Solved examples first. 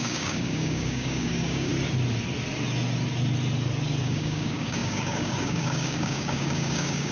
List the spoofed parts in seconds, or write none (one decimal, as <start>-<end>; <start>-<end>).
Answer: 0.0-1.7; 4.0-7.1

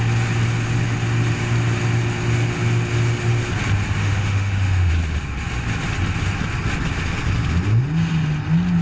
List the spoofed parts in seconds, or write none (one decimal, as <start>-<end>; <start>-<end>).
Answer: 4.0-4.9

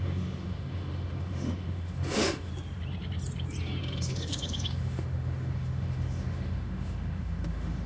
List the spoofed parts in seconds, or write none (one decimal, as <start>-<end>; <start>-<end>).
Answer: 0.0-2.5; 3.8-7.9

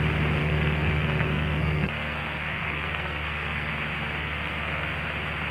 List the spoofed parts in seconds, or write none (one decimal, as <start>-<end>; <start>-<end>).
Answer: 0.4-3.7; 4.2-4.9

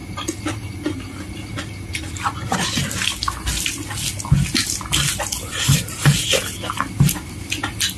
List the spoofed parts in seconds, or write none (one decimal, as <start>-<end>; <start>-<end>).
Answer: none

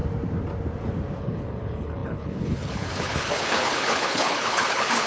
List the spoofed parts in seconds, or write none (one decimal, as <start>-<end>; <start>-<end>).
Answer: 1.2-5.1